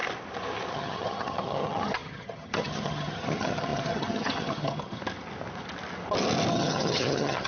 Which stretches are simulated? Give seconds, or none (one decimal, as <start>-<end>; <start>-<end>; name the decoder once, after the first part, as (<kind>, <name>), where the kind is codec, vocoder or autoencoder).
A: 0.7-5.0 (vocoder, HiFi-GAN); 6.5-7.5

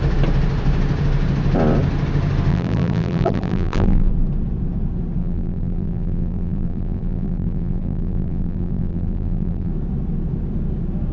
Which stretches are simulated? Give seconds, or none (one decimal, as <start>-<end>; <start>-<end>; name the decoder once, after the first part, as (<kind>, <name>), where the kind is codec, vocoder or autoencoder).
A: 2.5-4.1 (vocoder, BigVGAN v2); 5.2-9.7